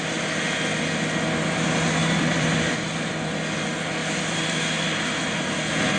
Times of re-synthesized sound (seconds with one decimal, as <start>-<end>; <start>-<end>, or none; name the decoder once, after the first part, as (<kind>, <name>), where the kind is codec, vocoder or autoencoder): 2.0-3.1 (vocoder, BigVGAN v2); 4.0-5.4